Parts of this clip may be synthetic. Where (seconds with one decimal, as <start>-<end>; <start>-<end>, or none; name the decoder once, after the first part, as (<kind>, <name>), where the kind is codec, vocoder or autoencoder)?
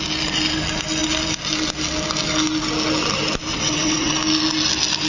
3.5-4.1 (vocoder, WaveNeXt)